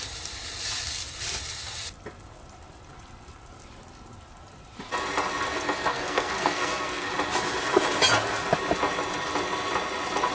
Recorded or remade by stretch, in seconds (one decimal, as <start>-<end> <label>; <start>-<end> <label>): 0.0-5.9 recorded; 5.9-7.1 remade; 7.1-10.3 recorded